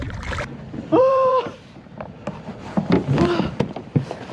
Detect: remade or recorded remade